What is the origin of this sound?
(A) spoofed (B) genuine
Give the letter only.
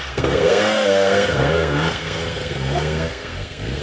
A